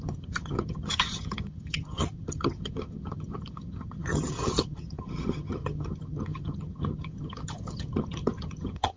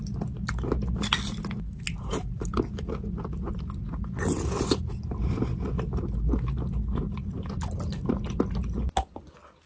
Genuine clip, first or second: second